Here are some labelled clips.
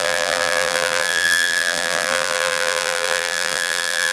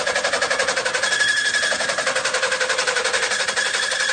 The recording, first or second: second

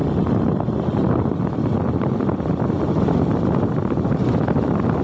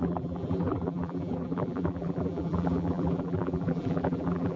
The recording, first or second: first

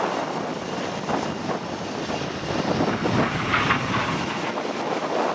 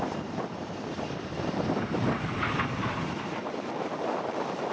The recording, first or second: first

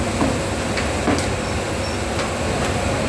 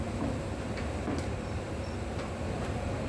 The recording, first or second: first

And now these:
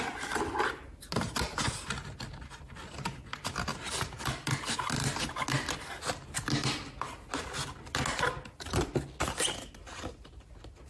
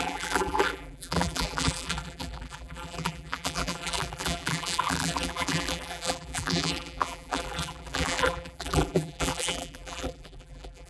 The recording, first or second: first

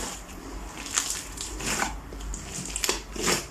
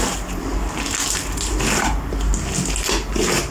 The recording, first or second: second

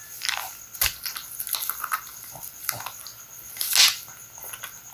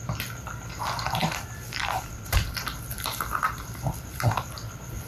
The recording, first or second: first